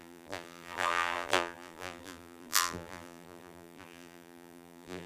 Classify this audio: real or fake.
fake